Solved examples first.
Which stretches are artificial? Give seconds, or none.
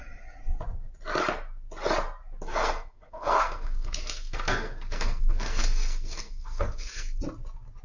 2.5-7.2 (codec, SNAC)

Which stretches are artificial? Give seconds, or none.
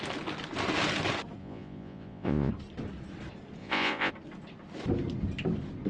1.4-2.5 (vocoder, Vocos); 3.6-4.1